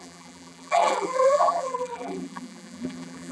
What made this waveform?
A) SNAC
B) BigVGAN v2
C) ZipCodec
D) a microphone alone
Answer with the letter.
B